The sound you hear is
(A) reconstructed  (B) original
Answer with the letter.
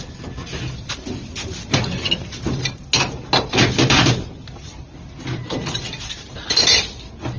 B